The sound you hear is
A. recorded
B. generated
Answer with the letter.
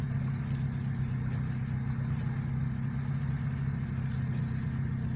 A